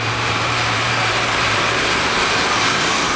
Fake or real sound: fake